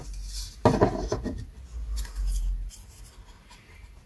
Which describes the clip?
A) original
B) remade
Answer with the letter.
A